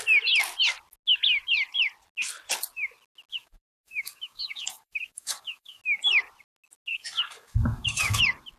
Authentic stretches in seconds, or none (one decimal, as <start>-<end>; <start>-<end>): 0.0-3.3; 5.8-6.9; 8.2-8.6